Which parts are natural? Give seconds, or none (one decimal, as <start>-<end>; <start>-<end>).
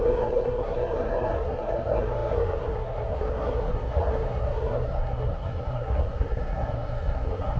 none